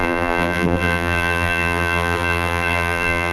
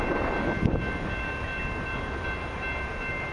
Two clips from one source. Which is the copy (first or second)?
first